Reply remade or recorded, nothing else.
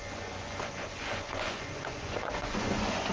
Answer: remade